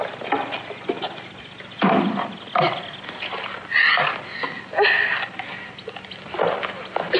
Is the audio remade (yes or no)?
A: no